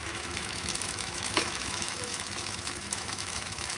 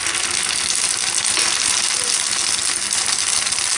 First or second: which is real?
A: second